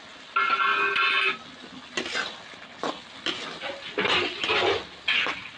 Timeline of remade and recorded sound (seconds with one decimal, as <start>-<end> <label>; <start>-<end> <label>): 0.0-5.6 recorded